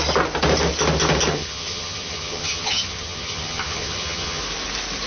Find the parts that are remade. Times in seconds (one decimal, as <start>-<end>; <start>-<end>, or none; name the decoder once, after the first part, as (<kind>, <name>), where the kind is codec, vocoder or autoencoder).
1.3-4.4 (vocoder, HiFi-GAN)